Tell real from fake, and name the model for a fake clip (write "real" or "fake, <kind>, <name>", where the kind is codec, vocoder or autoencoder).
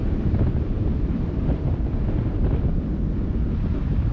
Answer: fake, vocoder, BigVGAN v2